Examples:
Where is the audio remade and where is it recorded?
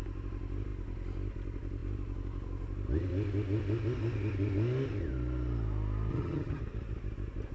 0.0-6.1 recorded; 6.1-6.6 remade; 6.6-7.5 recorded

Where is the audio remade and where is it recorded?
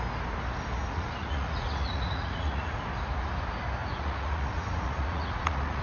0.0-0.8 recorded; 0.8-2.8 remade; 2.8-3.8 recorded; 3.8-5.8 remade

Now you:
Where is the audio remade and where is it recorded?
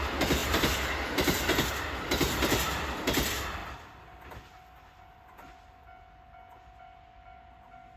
0.0-0.4 recorded; 0.4-1.7 remade; 1.7-8.0 recorded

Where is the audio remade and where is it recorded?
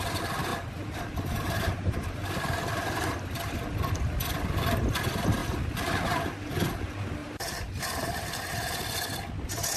0.0-0.5 recorded; 0.5-3.6 remade; 3.6-7.2 recorded; 7.2-8.3 remade; 8.3-9.8 recorded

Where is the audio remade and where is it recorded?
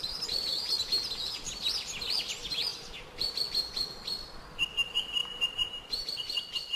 0.0-0.5 remade; 0.5-2.7 recorded; 2.7-3.4 remade; 3.4-5.2 recorded; 5.2-6.8 remade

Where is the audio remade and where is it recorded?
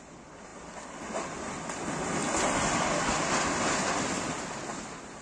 0.0-5.2 recorded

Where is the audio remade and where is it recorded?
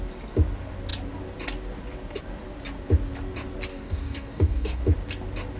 0.0-3.7 recorded; 3.7-4.8 remade; 4.8-5.6 recorded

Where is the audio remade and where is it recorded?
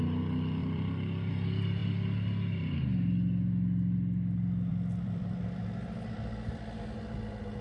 0.0-0.6 recorded; 0.6-1.3 remade; 1.3-4.7 recorded; 4.7-5.6 remade; 5.6-7.6 recorded